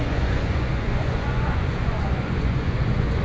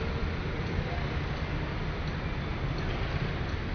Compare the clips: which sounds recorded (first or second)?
second